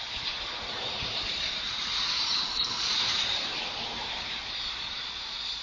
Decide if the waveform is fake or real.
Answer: fake